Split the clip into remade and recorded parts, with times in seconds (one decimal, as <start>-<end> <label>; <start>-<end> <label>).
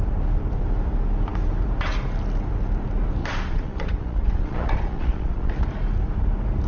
0.0-3.2 recorded; 3.2-5.5 remade; 5.5-6.7 recorded